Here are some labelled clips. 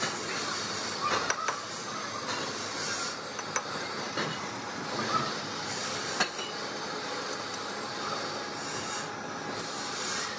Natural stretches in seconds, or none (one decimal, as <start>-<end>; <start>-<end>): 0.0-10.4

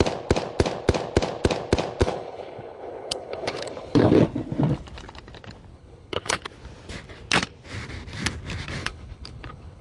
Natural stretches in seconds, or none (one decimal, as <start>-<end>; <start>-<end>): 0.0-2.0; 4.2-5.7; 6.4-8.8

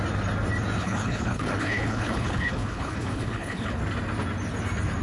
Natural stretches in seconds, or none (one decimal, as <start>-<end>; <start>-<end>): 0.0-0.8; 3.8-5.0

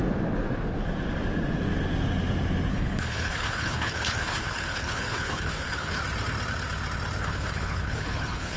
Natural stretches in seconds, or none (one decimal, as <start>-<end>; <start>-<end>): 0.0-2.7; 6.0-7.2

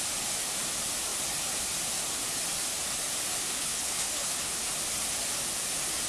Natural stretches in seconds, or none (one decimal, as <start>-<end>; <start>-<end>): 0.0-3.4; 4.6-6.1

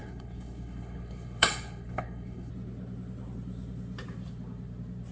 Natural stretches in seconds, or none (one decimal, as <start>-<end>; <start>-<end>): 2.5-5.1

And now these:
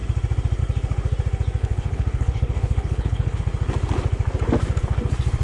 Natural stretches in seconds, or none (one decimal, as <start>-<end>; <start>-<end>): 0.0-1.6; 3.4-5.4